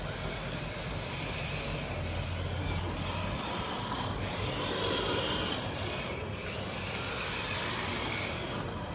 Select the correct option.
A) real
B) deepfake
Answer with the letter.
A